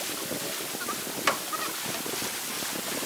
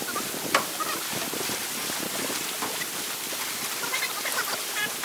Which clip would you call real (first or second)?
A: first